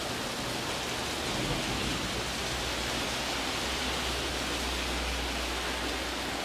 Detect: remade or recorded recorded